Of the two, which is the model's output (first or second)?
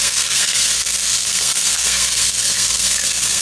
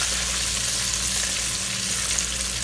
first